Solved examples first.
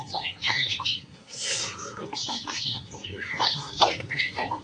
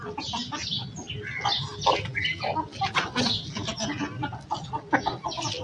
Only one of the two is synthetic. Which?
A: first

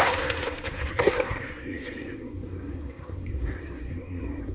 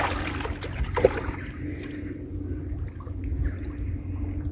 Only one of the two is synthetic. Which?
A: first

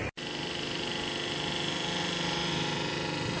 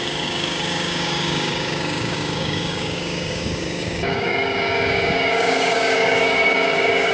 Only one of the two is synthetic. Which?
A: second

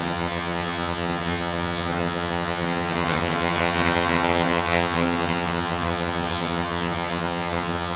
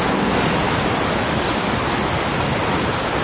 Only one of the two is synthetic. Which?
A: first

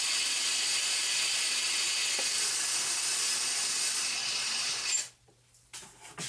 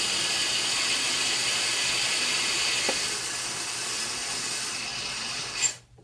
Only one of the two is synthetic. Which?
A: second